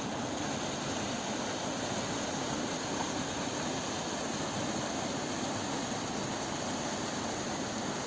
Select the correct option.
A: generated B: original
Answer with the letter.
B